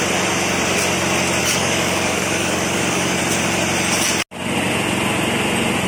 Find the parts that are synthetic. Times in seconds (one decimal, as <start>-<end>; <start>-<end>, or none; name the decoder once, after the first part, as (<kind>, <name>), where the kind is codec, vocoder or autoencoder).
1.4-3.2 (codec, DAC)